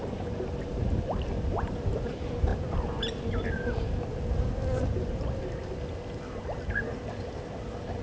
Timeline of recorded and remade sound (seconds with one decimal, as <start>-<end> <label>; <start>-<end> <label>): 0.0-2.5 remade; 2.5-7.3 recorded; 7.3-8.0 remade